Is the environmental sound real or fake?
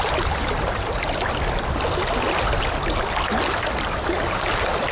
real